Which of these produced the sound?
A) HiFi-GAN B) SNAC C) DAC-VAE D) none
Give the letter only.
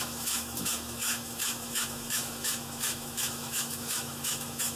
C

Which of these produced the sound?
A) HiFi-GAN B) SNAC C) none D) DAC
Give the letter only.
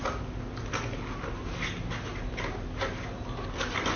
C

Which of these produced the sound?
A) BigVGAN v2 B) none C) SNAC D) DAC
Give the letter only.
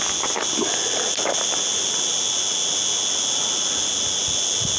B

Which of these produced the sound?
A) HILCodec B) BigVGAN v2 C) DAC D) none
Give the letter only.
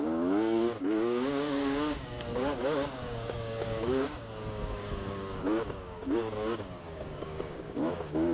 C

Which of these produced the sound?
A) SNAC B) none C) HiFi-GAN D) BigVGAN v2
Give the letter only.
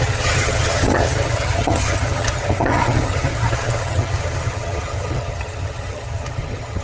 C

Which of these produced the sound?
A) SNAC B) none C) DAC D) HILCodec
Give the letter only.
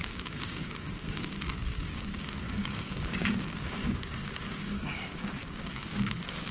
C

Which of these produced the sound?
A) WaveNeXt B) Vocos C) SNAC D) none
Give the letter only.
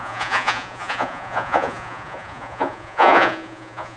B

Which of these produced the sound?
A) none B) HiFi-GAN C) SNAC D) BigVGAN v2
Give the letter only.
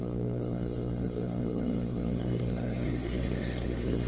C